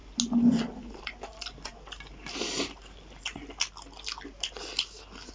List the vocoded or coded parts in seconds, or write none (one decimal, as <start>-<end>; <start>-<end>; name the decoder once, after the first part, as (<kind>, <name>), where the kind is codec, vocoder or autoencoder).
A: none